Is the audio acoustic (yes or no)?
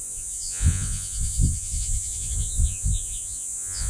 no